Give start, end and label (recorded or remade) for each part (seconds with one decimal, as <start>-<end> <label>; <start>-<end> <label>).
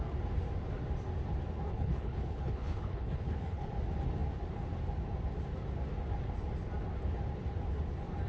0.0-1.7 recorded; 1.7-3.7 remade; 3.7-8.3 recorded